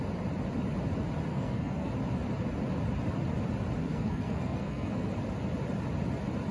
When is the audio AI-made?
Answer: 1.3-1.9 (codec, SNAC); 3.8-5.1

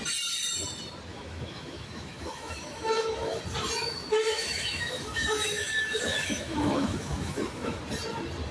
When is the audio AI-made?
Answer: 1.1-3.4 (autoencoder, DAC-VAE); 3.8-7.8

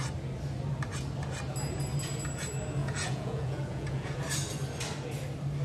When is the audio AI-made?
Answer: 2.8-4.2 (vocoder, Vocos)

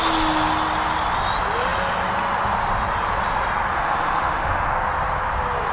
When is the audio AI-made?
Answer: 3.7-4.7 (autoencoder, DAC-VAE)